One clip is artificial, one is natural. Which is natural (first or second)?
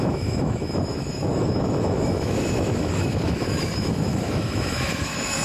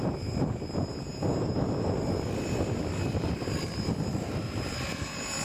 second